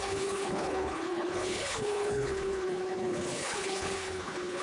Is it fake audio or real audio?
fake